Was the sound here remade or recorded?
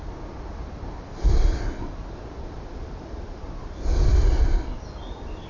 recorded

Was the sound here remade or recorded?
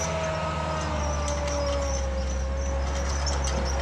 recorded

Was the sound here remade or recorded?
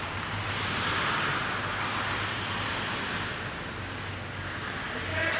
recorded